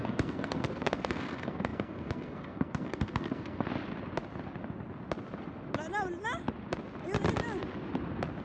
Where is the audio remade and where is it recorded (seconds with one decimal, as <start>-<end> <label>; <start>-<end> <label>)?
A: 0.0-3.7 remade; 3.7-8.4 recorded